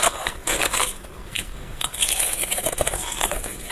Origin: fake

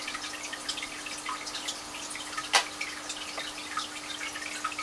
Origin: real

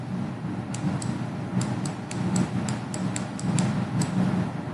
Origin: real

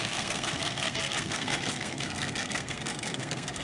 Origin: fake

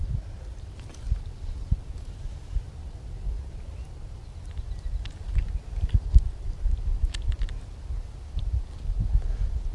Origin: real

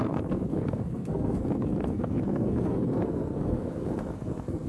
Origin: fake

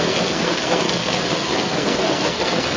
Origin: fake